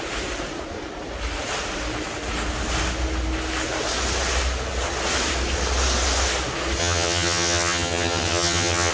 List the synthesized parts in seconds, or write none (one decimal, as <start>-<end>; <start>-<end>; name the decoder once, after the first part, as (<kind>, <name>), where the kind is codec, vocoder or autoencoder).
6.8-8.9 (vocoder, HiFi-GAN)